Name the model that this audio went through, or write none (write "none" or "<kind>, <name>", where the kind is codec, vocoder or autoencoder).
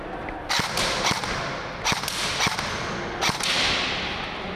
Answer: none